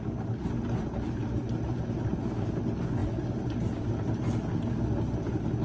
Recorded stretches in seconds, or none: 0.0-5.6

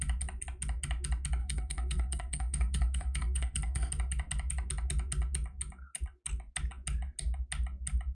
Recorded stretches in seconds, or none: 0.0-1.4; 3.9-8.1

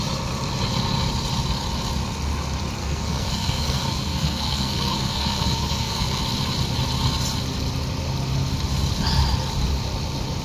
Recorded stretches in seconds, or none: 0.0-2.8; 6.2-10.4

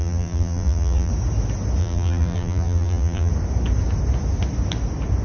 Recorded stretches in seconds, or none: 1.1-1.8; 3.3-5.2

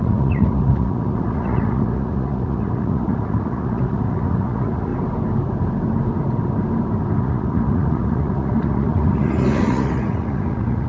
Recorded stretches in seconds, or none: 4.9-7.2